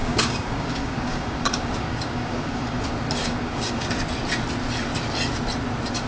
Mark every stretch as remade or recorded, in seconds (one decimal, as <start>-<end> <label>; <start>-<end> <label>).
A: 0.0-2.8 remade; 2.8-3.2 recorded; 3.2-3.9 remade; 3.9-6.1 recorded